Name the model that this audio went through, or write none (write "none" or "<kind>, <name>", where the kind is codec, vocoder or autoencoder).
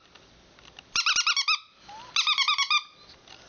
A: none